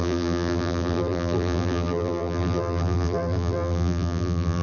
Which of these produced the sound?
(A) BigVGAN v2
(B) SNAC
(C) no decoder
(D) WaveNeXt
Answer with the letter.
A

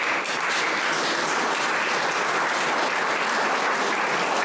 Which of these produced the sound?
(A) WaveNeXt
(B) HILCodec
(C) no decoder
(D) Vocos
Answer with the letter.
C